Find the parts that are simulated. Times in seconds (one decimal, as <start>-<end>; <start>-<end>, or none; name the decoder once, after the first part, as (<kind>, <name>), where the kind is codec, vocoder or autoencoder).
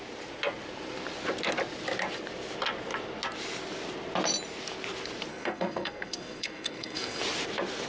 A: 5.3-7.2 (codec, SNAC)